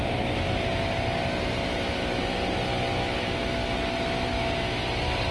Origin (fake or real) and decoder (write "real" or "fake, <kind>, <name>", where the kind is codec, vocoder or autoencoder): real